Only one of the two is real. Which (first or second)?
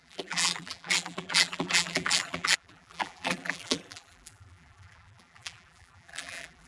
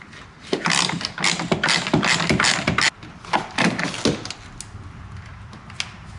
second